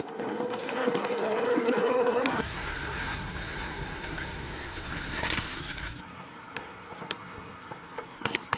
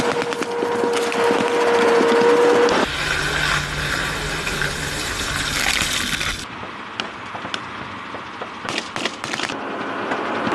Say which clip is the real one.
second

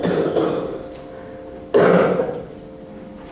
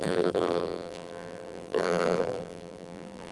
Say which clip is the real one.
first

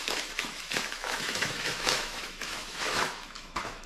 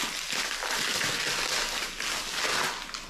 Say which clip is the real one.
second